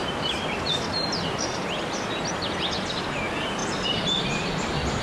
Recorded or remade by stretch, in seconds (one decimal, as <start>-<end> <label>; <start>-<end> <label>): 0.0-5.0 recorded